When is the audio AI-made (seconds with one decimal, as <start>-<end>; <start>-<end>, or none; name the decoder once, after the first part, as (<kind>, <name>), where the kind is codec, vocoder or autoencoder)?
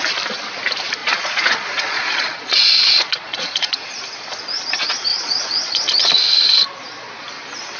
1.0-3.8 (vocoder, Vocos); 5.1-6.1